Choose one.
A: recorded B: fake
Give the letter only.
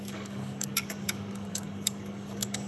B